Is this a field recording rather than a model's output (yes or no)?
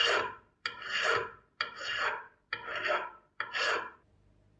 yes